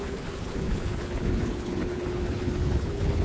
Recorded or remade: remade